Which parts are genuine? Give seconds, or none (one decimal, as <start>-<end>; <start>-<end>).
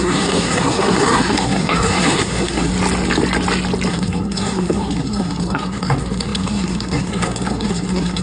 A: 2.7-3.9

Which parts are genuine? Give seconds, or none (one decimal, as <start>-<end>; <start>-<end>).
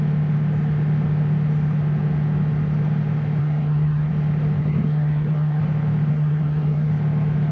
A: 0.0-3.4; 4.1-4.6; 5.6-6.1; 6.9-7.5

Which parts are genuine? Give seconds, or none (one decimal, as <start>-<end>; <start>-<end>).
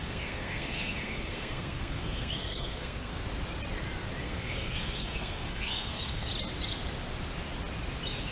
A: 3.1-4.2; 6.3-8.3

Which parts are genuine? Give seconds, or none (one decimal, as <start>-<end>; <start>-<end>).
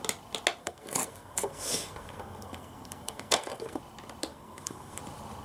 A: 0.0-0.6; 3.8-4.3; 5.0-5.4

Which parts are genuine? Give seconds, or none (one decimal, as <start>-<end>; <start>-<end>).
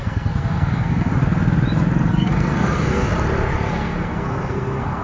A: 1.1-2.1; 3.1-3.7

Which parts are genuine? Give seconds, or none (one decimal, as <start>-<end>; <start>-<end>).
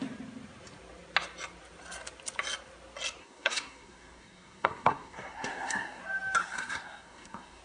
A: 0.0-3.2; 6.0-6.4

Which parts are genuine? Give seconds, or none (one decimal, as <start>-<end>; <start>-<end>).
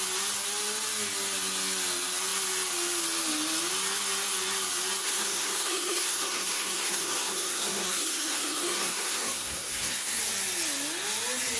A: 0.0-5.0; 10.2-11.6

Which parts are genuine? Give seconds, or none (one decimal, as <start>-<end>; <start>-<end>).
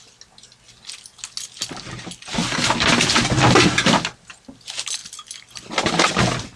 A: 0.0-6.6